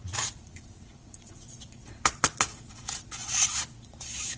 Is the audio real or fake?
fake